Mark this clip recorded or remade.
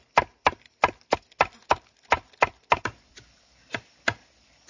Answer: recorded